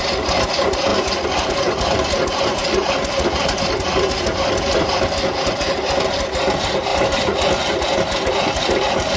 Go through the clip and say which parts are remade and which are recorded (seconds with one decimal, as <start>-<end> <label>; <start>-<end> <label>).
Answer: 0.0-9.2 recorded